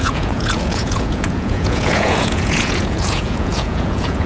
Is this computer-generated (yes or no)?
yes